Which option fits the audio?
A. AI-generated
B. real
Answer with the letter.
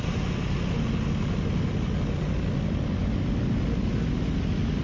B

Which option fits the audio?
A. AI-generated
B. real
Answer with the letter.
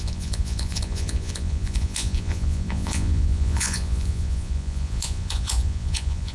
A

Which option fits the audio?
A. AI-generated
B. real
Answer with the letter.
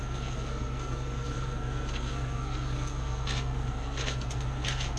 A